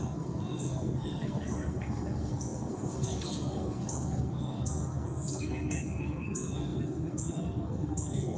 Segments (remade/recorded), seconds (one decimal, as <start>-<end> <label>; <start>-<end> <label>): 0.0-8.4 remade